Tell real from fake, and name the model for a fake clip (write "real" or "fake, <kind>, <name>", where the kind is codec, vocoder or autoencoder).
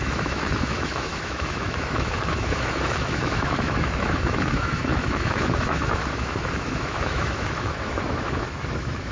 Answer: fake, autoencoder, DAC-VAE